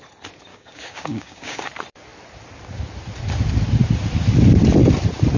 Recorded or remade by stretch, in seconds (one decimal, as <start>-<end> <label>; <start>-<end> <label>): 0.0-0.5 recorded; 0.5-1.6 remade; 1.6-5.4 recorded